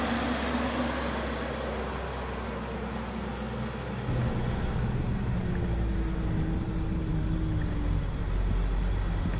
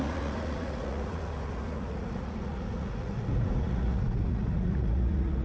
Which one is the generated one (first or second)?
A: second